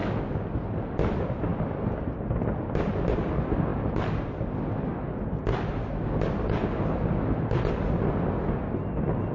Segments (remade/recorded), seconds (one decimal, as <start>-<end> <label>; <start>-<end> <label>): 0.0-9.3 recorded